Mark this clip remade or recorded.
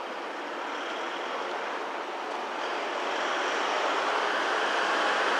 remade